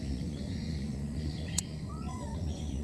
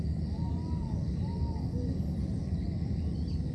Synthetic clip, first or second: first